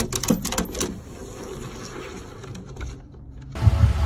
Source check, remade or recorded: recorded